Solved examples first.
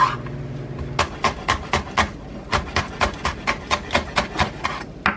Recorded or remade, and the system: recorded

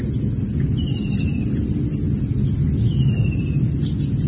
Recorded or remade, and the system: recorded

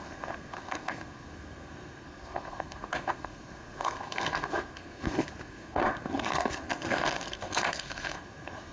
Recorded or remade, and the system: remade, codec, SNAC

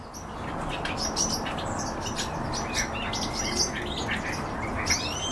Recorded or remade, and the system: recorded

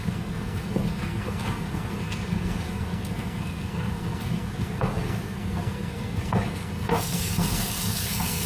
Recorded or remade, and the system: remade, codec, SNAC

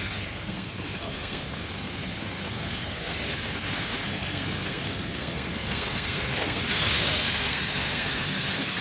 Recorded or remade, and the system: remade, codec, SNAC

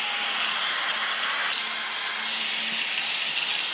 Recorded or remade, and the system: recorded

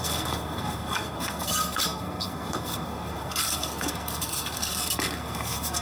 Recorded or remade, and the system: remade, codec, SNAC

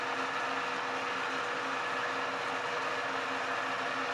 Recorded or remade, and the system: recorded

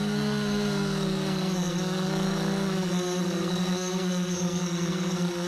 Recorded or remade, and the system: remade, codec, SNAC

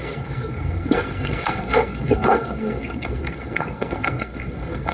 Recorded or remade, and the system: remade, codec, SNAC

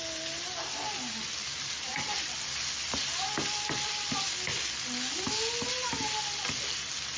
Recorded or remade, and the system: recorded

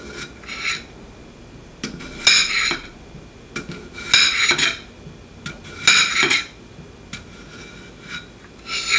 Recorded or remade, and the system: recorded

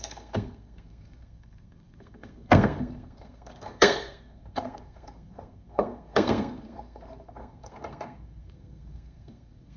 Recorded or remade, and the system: remade, codec, SNAC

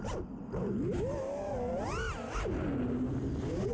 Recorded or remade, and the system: recorded